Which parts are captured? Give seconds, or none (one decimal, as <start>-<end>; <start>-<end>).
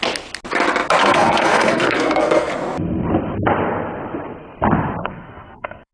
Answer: 0.0-1.0; 2.5-5.0